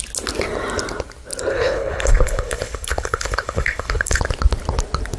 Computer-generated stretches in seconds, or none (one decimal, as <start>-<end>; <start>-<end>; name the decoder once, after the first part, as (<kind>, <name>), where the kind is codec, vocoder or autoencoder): 1.5-4.2 (codec, HILCodec)